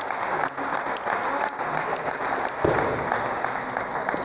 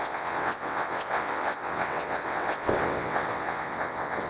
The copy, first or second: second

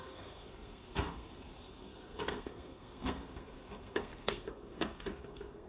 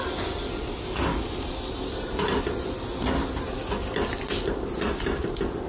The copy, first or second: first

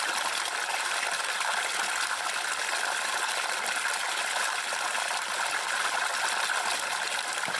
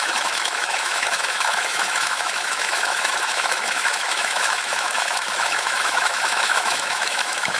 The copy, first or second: second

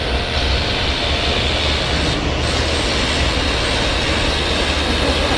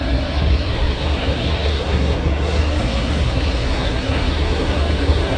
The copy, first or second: second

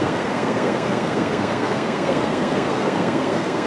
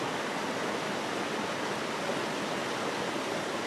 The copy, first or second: first